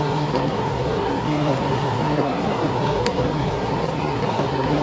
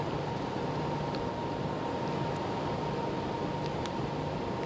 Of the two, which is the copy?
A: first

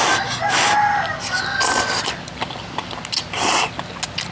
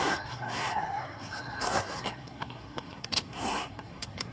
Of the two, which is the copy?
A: second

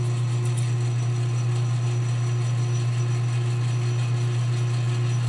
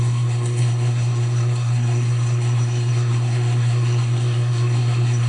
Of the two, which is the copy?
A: second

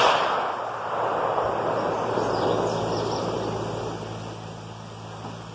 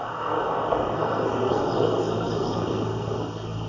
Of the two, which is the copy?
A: second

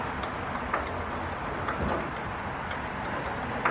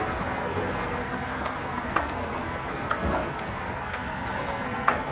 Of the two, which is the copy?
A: second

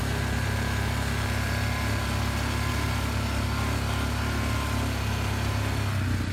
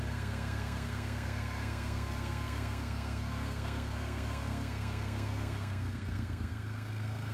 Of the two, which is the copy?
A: second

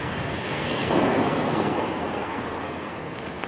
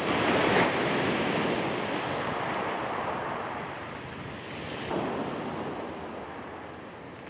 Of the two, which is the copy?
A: first